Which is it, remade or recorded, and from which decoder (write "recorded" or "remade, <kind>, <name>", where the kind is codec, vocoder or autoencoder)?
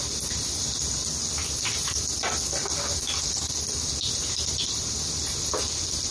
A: recorded